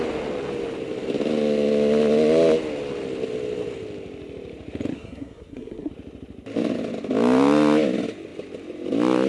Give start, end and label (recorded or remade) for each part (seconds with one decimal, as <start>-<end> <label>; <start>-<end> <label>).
0.0-4.9 recorded; 4.9-5.9 remade; 5.9-9.3 recorded

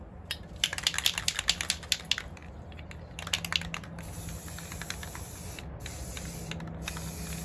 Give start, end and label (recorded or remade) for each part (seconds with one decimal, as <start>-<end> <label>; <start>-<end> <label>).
0.0-7.4 recorded